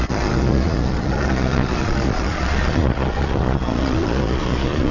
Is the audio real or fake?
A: fake